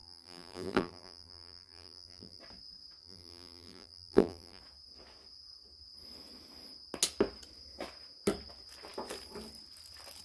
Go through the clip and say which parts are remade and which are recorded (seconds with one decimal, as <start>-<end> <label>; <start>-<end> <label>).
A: 0.0-2.4 remade; 2.4-3.0 recorded; 3.0-4.6 remade; 4.6-10.2 recorded